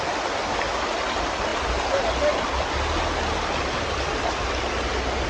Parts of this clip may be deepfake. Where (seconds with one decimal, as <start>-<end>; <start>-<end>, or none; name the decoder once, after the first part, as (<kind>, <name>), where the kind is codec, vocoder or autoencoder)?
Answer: none

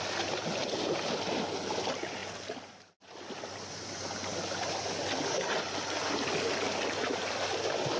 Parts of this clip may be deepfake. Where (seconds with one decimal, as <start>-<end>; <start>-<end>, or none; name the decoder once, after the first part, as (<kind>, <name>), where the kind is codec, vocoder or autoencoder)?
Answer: none